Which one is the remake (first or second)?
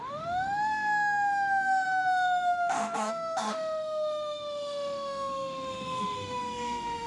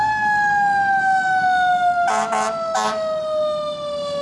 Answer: first